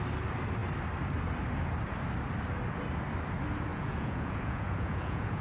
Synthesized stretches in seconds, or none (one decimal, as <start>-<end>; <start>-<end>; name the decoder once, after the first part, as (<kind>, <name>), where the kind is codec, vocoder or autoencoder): 3.7-5.4 (vocoder, Vocos)